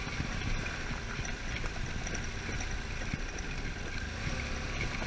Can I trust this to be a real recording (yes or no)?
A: yes